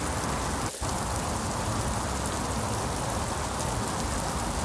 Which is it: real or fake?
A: real